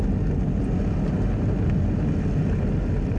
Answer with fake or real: real